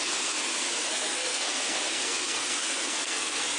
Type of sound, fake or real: fake